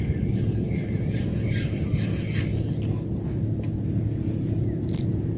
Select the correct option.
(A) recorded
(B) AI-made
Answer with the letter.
A